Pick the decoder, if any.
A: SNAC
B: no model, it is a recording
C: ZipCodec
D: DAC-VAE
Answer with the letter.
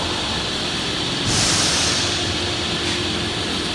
B